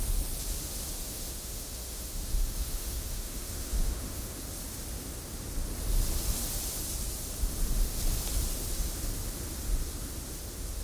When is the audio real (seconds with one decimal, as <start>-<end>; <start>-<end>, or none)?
0.0-1.0; 4.4-10.8